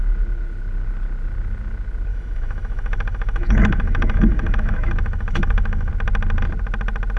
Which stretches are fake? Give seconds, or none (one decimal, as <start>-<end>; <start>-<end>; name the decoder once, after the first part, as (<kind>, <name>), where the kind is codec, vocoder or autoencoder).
2.1-5.9 (autoencoder, DAC-VAE)